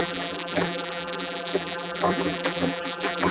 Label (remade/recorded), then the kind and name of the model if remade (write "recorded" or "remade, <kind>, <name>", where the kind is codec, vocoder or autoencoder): remade, vocoder, BigVGAN v2